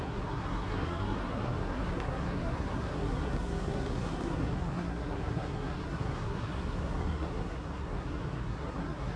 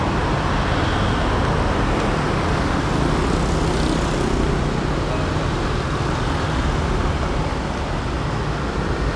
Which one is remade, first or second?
first